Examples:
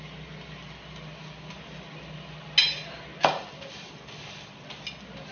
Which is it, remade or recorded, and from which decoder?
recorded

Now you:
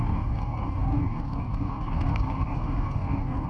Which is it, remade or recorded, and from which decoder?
remade, codec, DAC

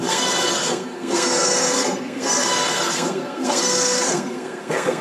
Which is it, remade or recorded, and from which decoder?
remade, codec, SNAC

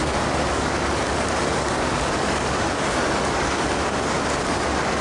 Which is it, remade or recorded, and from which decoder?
remade, codec, DAC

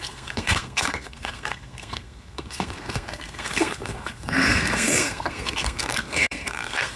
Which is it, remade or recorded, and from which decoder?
remade, codec, SNAC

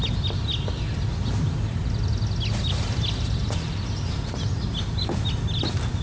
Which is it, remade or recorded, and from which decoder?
recorded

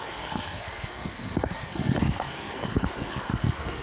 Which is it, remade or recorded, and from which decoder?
remade, codec, SNAC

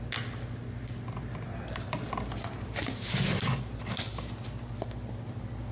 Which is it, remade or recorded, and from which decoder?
recorded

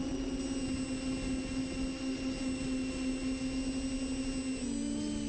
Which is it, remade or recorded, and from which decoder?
recorded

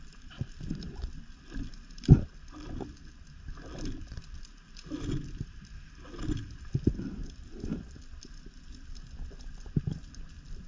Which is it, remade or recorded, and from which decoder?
recorded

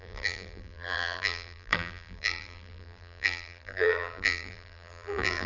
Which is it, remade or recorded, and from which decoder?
remade, vocoder, BigVGAN v2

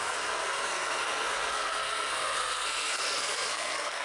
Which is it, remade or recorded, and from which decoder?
remade, codec, SNAC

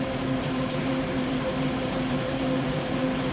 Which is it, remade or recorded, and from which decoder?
remade, vocoder, BigVGAN v2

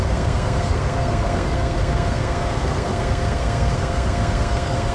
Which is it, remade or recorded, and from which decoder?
remade, codec, SNAC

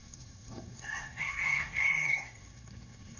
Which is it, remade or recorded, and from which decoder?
remade, codec, SNAC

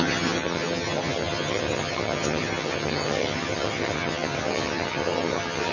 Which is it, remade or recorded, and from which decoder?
remade, vocoder, HiFi-GAN